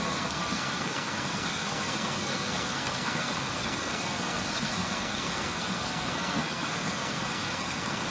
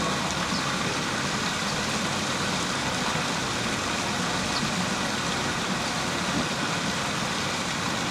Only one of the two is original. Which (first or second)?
second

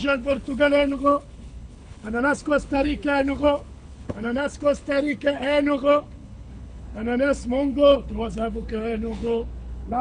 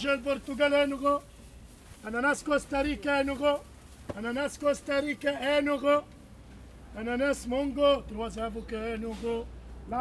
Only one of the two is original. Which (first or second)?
second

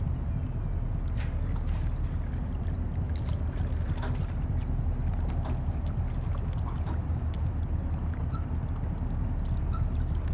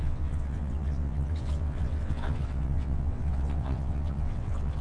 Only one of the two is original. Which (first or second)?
first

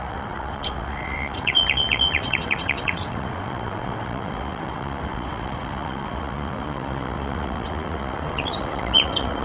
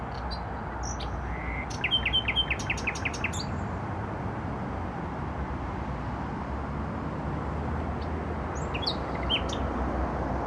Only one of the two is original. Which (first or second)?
second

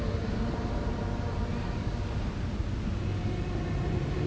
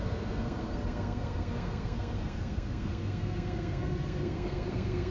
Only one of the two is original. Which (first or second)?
first